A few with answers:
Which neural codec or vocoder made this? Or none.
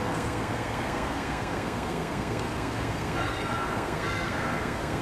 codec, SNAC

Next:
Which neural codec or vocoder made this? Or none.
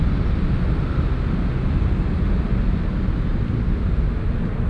none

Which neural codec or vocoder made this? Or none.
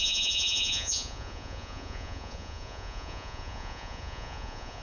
vocoder, Vocos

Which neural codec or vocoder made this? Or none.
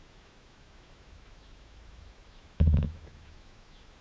autoencoder, DAC-VAE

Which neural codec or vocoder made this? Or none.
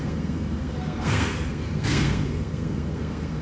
codec, SNAC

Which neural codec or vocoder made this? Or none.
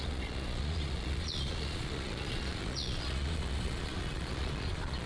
vocoder, Vocos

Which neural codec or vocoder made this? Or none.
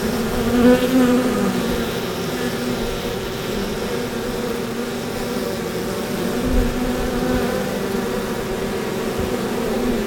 none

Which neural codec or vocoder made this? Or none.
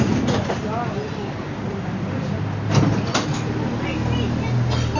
none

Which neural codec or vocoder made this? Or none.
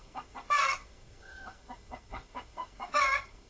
codec, SNAC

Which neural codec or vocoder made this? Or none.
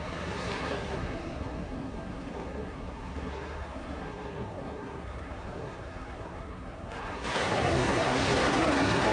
codec, SNAC